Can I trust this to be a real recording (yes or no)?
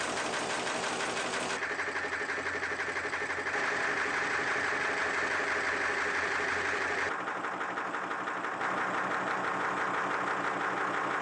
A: yes